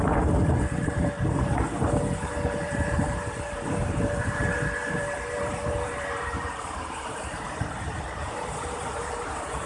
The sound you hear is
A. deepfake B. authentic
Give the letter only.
A